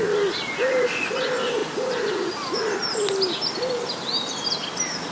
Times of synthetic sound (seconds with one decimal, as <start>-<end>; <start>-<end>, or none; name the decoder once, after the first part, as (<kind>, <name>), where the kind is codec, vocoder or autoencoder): none